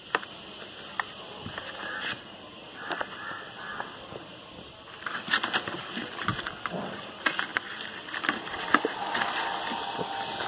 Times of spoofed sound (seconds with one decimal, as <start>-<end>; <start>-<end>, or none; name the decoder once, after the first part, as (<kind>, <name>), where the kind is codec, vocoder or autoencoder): 7.5-8.8 (vocoder, BigVGAN v2)